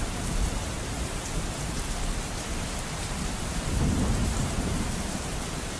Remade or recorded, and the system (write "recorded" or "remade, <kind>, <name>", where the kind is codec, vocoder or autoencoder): remade, vocoder, BigVGAN v2